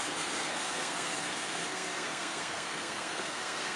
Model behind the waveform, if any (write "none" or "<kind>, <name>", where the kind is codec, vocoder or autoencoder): codec, SNAC